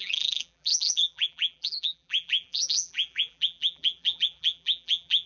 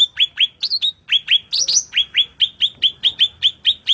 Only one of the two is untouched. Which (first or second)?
second